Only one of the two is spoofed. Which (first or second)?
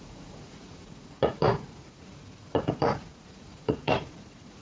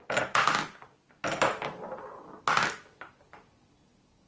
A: first